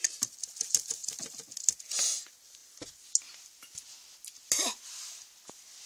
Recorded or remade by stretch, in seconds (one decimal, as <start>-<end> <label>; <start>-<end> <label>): 0.0-5.9 recorded